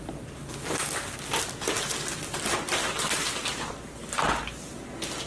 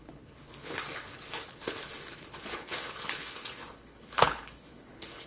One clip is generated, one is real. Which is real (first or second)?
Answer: first